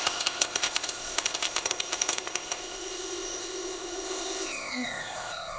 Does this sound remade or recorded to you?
remade